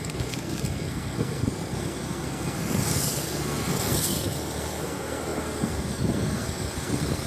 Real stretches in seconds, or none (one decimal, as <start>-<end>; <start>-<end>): none